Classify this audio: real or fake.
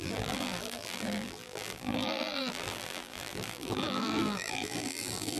fake